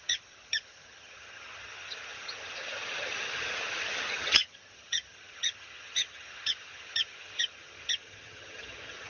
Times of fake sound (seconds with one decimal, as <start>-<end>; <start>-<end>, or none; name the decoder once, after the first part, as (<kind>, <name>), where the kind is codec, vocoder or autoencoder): 0.0-9.1 (vocoder, HiFi-GAN)